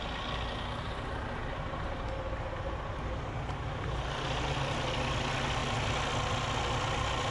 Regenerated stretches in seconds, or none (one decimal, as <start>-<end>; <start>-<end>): none